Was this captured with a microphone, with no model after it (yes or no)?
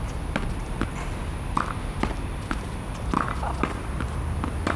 yes